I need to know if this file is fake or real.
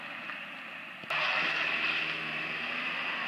real